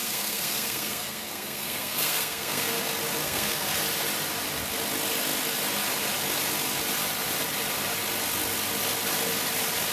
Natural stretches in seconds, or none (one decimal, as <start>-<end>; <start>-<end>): 2.8-3.2; 3.8-9.9